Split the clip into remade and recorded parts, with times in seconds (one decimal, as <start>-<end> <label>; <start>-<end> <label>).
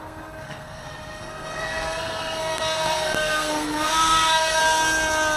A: 0.0-4.6 remade; 4.6-5.4 recorded